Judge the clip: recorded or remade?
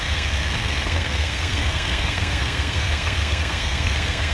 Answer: remade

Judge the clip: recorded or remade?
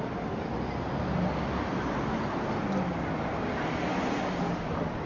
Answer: recorded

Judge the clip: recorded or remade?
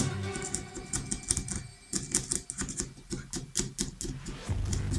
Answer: recorded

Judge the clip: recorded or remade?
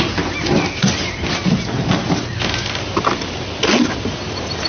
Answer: recorded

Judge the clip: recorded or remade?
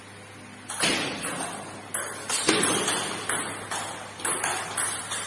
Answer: recorded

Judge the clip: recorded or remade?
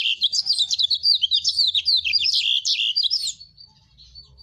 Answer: remade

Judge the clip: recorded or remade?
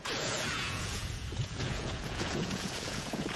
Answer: remade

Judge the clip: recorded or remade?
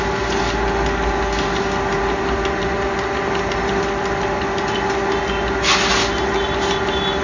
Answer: recorded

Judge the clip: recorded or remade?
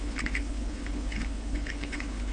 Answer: remade